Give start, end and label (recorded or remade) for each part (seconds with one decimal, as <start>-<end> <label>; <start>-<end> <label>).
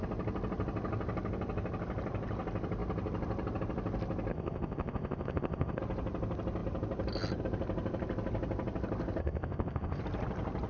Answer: 0.0-4.3 recorded; 4.3-5.8 remade; 5.8-9.2 recorded; 9.2-10.0 remade; 10.0-10.7 recorded